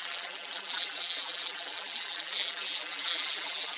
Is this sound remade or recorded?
remade